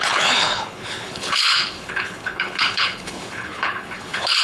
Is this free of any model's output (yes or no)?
no